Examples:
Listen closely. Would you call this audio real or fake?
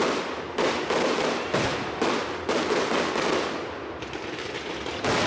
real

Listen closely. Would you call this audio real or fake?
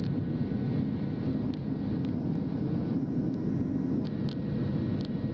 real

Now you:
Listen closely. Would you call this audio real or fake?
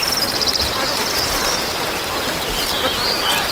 real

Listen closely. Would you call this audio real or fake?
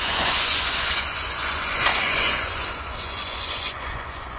fake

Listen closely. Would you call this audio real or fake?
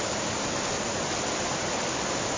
real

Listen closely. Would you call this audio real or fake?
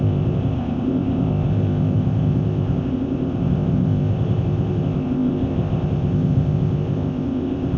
fake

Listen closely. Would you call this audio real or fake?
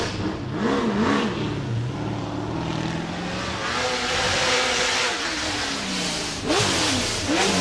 real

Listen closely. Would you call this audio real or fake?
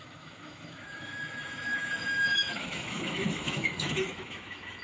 fake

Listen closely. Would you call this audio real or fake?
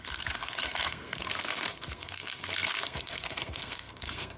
fake